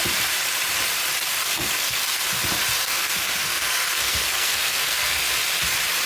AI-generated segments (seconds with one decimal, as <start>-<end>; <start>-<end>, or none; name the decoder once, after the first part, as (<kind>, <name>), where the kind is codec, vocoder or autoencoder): 1.4-2.2 (codec, SNAC); 2.8-5.2